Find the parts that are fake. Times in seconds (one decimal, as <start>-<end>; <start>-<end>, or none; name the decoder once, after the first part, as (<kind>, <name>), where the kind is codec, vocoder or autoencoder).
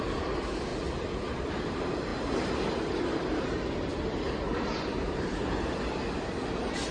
0.0-0.7 (vocoder, BigVGAN v2); 1.5-2.1; 2.9-6.9